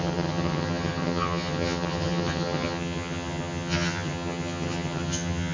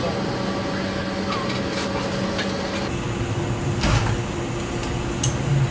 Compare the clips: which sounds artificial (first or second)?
first